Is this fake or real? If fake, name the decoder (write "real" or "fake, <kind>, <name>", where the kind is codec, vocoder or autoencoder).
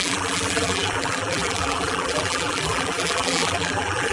fake, vocoder, BigVGAN v2